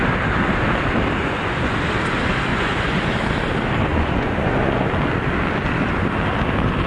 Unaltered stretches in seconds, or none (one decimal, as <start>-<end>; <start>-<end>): 0.0-1.2; 1.8-2.5; 3.0-3.9; 4.9-6.9